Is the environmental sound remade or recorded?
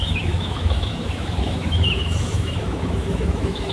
remade